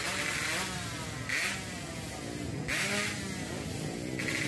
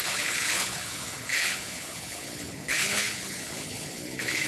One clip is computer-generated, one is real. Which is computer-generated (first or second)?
second